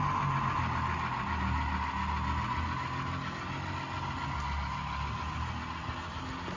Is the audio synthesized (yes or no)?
no